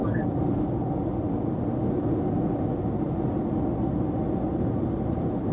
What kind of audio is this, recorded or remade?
recorded